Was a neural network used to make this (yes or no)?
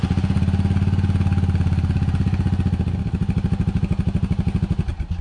no